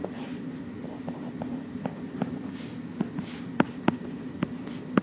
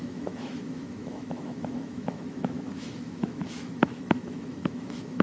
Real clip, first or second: first